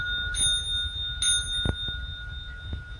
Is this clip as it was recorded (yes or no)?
yes